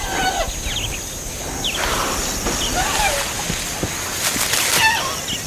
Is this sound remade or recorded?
recorded